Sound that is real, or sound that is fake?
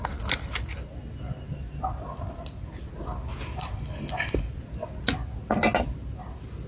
real